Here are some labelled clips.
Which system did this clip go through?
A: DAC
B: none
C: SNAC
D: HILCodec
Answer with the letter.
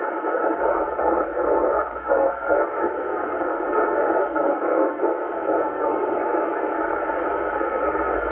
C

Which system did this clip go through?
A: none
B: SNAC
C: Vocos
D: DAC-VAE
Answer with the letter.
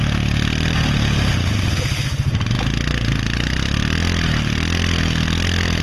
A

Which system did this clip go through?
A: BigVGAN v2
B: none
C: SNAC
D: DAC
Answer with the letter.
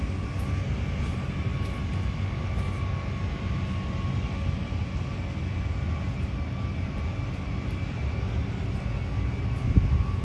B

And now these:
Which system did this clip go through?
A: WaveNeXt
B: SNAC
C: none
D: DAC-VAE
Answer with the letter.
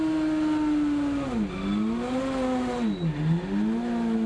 C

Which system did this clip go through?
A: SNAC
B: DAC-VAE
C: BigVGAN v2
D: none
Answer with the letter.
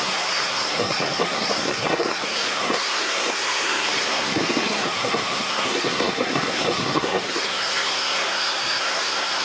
A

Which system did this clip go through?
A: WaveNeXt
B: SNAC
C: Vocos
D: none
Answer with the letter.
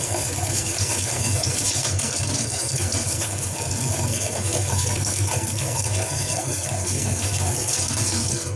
B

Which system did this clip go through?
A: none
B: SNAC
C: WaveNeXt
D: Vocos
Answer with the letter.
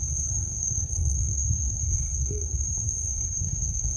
B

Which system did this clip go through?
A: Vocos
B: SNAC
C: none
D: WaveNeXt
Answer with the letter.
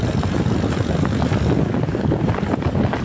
C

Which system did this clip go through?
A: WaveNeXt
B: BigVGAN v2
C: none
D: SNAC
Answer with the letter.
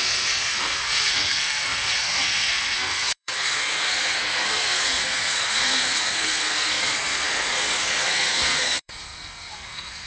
D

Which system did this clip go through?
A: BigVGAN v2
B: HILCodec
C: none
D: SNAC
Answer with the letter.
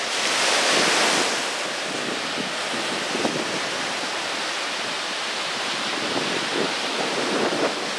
C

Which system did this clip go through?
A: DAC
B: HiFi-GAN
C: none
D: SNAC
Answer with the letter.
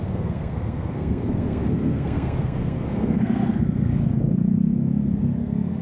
D